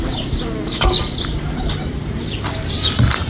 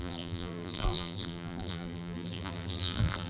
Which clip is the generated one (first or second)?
second